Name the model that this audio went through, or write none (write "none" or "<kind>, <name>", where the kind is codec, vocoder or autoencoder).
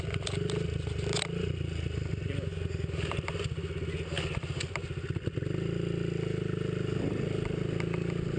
none